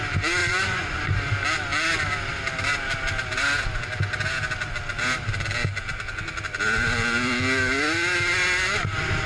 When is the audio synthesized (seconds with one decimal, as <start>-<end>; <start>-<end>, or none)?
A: 0.4-1.0